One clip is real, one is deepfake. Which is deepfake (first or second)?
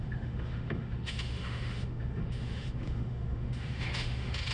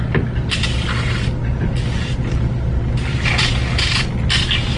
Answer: first